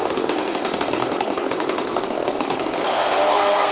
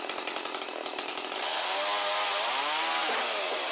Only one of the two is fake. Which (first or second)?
first